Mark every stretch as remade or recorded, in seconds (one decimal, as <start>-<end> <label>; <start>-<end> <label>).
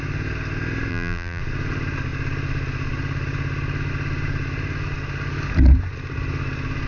0.0-0.9 recorded; 0.9-1.4 remade; 1.4-6.9 recorded